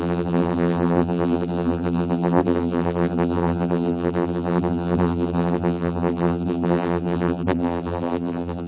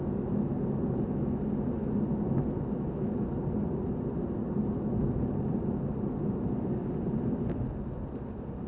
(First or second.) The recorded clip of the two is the second